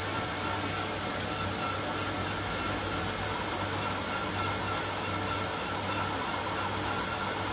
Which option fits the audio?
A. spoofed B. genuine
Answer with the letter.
B